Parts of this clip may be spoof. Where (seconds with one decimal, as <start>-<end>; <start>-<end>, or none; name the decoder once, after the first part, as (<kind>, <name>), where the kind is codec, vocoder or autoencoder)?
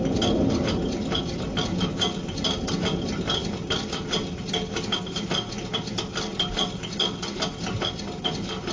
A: none